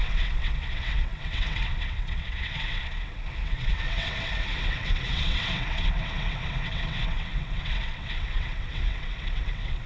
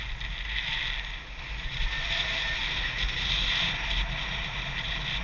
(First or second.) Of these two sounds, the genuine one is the second